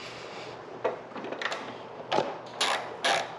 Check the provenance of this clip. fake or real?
real